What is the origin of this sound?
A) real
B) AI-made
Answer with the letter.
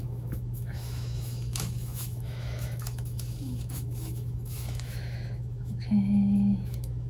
B